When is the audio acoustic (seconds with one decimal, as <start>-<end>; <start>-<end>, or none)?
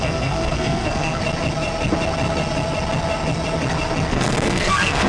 1.2-4.1